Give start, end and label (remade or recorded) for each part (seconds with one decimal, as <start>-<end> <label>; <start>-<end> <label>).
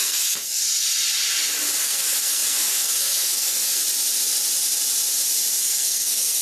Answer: 0.0-0.6 remade; 0.6-1.8 recorded; 1.8-3.8 remade; 3.8-5.6 recorded; 5.6-6.4 remade